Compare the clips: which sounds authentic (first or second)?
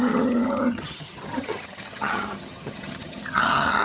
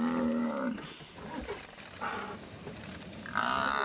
second